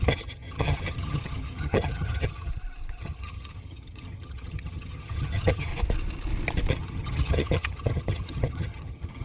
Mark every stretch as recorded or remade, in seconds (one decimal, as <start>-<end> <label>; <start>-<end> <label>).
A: 0.0-2.5 remade; 2.5-3.0 recorded; 3.0-5.7 remade; 5.7-6.7 recorded; 6.7-9.2 remade